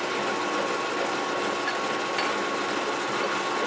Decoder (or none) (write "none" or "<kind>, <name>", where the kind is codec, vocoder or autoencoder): none